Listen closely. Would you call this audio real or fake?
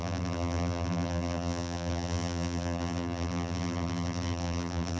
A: fake